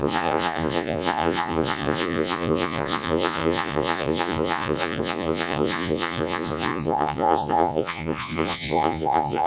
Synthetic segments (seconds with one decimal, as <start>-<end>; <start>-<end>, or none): 0.0-9.5